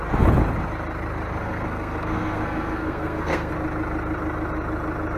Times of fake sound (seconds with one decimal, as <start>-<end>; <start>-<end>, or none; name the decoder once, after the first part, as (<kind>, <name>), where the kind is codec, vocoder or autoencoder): 1.4-3.5 (codec, SNAC)